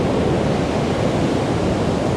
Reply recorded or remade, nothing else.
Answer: recorded